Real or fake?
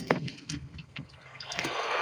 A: fake